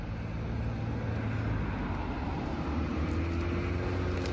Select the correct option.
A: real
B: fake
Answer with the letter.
A